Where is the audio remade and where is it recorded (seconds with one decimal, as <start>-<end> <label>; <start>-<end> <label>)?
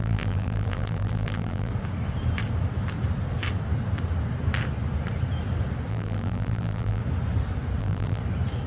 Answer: 0.0-1.7 remade; 1.7-5.9 recorded; 5.9-7.0 remade; 7.0-7.8 recorded; 7.8-8.2 remade; 8.2-8.7 recorded